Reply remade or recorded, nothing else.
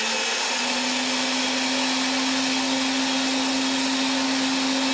recorded